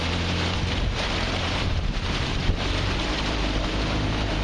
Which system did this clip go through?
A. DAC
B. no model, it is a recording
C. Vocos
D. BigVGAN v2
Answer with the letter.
D